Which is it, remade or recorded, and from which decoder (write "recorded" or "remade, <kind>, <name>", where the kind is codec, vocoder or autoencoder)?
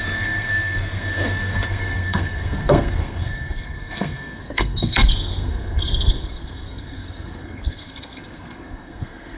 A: remade, codec, SNAC